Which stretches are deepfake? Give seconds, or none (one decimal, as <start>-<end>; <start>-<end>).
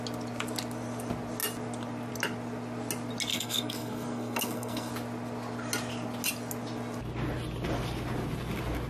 3.3-4.9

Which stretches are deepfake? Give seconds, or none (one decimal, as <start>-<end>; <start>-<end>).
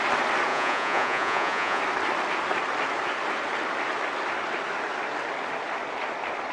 0.5-1.8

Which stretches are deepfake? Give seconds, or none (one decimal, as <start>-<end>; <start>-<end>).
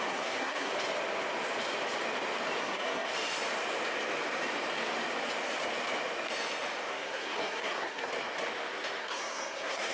0.0-0.7; 2.6-3.1; 6.9-8.1; 9.0-9.9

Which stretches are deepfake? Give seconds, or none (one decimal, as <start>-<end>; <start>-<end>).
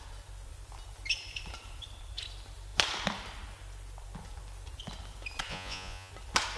5.5-6.1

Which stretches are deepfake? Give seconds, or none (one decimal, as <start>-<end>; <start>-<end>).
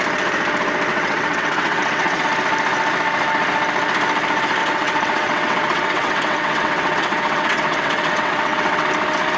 0.9-2.2; 4.6-8.9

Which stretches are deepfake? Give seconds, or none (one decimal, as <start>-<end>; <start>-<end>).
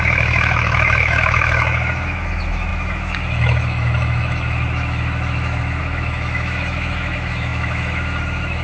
0.0-8.6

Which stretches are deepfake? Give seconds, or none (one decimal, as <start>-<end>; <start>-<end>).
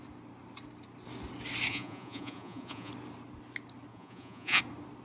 1.7-2.9; 3.9-4.6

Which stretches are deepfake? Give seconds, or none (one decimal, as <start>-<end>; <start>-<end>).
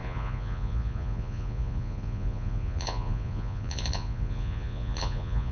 0.0-5.5